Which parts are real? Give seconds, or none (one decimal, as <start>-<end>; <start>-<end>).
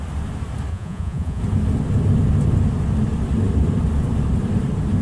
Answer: 0.0-0.7; 1.4-5.0